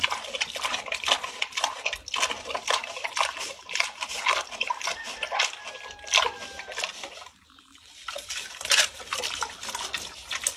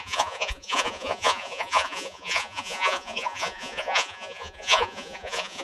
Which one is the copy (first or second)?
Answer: second